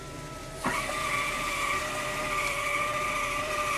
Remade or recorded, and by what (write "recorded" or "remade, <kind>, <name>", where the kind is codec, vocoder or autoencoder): remade, vocoder, BigVGAN v2